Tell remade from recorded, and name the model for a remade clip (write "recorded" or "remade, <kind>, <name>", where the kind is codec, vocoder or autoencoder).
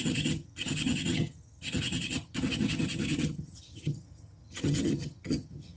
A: remade, vocoder, HiFi-GAN